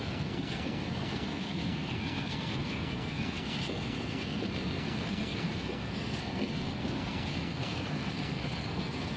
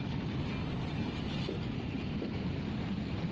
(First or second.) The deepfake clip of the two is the first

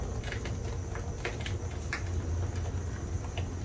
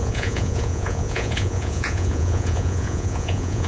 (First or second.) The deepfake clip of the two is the second